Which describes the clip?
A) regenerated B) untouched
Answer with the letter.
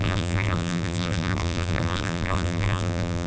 A